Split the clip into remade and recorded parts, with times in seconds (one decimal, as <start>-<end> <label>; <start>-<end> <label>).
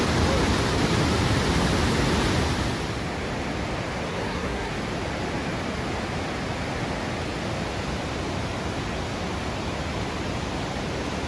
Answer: 0.0-4.1 recorded; 4.1-4.7 remade; 4.7-11.3 recorded